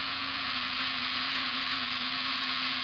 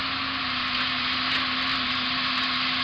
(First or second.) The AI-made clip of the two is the first